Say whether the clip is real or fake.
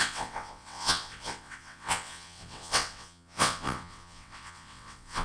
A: fake